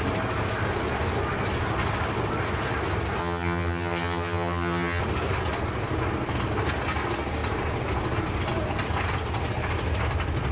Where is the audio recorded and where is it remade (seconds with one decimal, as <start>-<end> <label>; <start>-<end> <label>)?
0.0-3.2 recorded; 3.2-5.0 remade; 5.0-10.5 recorded